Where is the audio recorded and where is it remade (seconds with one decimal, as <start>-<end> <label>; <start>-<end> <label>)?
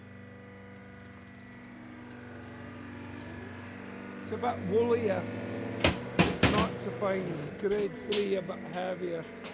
0.0-9.5 recorded